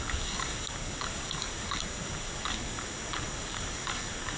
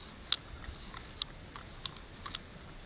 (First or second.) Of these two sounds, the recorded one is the second